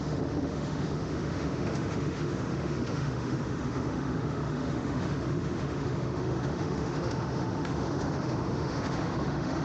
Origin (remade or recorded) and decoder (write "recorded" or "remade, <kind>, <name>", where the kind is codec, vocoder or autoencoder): remade, autoencoder, DAC-VAE